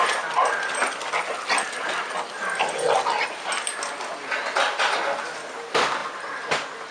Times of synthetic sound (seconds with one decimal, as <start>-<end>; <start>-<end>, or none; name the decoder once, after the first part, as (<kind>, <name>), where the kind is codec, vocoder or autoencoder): none